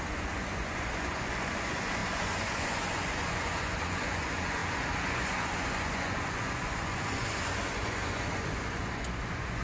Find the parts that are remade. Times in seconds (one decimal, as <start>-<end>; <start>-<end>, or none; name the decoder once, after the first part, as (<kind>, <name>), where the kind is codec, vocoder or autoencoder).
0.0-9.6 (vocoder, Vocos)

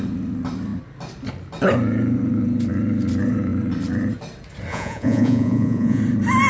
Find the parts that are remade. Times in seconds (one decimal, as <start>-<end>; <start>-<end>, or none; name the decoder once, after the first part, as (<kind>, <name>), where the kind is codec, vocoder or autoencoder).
4.7-6.0 (vocoder, Vocos)

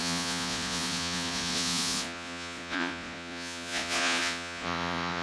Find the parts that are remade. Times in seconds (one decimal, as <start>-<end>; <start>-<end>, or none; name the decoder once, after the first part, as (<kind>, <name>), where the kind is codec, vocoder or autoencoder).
0.0-5.2 (vocoder, Vocos)